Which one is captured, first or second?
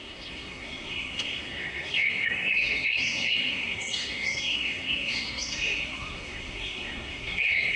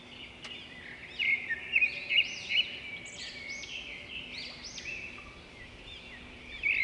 second